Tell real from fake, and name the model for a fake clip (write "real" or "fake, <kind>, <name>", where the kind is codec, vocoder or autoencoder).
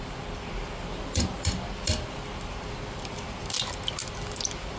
real